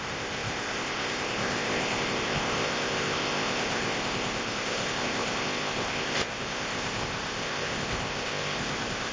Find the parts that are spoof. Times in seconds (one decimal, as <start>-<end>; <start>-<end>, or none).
0.0-9.1